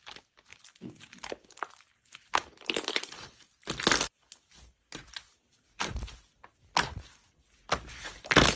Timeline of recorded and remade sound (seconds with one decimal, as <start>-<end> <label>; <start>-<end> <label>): 0.0-0.5 recorded; 0.5-1.3 remade; 1.3-2.4 recorded; 2.4-5.4 remade; 5.4-8.6 recorded